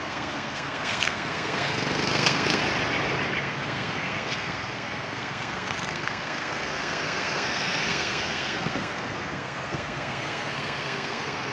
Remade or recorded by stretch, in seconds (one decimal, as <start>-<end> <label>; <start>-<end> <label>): 0.0-2.6 remade; 2.6-3.4 recorded; 3.4-11.5 remade